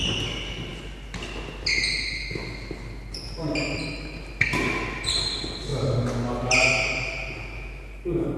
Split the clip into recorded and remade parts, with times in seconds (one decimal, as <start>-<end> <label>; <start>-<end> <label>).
0.0-8.4 recorded